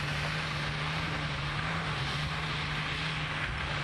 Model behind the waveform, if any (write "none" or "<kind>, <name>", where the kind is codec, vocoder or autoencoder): none